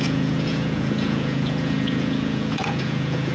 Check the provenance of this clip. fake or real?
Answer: fake